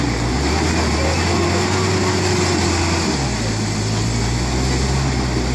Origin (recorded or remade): recorded